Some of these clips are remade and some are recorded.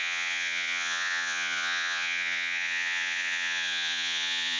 remade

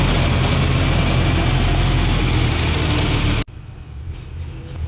recorded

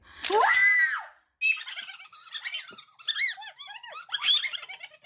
recorded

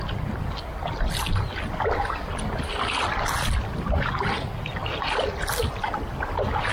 recorded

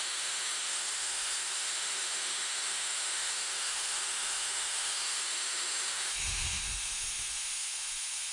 remade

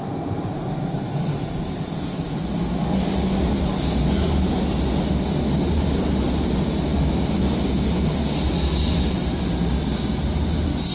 recorded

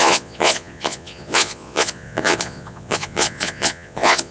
remade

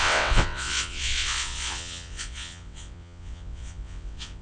remade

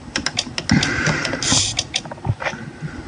recorded